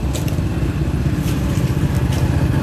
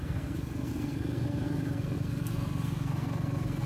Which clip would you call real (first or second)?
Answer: first